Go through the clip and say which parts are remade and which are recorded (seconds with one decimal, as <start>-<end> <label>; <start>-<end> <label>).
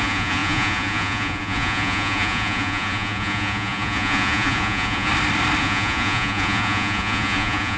0.0-5.1 remade; 5.1-5.6 recorded; 5.6-7.8 remade